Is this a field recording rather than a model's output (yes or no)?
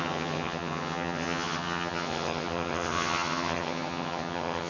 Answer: no